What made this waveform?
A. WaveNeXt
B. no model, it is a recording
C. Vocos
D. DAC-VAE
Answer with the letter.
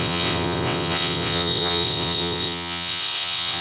A